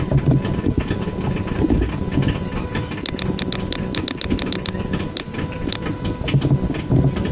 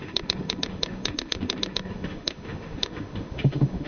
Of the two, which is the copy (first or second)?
second